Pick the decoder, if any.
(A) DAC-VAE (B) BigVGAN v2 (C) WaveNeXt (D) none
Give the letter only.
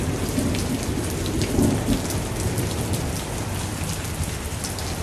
D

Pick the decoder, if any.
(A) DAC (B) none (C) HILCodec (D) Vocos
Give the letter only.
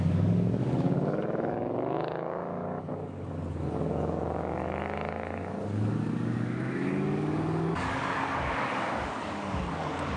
A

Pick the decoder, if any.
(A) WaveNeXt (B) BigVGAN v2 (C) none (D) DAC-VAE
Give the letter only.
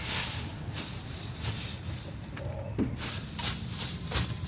B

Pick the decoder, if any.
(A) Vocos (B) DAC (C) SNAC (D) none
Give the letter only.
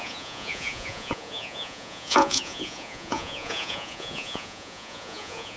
A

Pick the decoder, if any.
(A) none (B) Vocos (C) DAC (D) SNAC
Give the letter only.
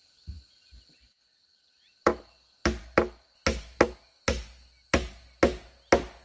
A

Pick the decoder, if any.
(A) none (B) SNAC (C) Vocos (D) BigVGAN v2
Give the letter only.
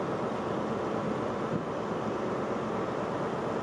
A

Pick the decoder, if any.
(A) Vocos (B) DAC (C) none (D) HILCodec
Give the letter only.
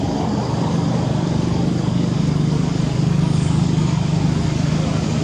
B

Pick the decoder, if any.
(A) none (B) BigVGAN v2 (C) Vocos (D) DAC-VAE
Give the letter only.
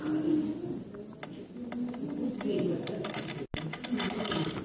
A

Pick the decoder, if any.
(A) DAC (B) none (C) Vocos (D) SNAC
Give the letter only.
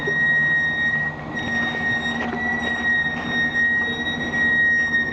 B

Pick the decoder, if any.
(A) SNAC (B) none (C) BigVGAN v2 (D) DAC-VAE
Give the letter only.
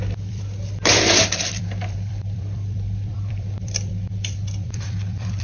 C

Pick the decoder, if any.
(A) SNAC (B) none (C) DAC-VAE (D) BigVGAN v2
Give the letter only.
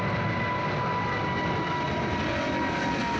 B